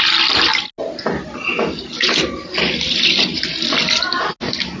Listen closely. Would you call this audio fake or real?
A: real